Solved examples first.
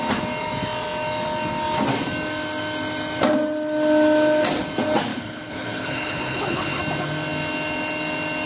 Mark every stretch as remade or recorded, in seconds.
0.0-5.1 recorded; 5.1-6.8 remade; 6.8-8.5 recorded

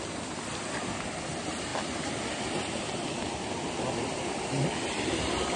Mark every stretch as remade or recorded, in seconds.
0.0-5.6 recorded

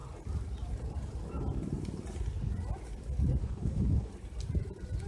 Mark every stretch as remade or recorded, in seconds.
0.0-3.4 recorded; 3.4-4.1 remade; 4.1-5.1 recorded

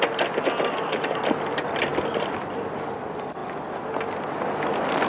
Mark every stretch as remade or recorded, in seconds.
0.0-5.1 recorded